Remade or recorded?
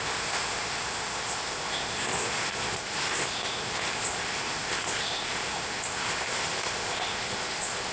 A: remade